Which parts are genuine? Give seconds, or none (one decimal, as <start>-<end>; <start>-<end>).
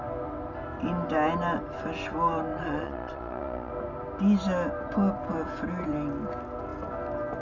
0.0-2.5; 3.7-7.4